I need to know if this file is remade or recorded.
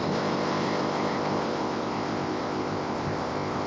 remade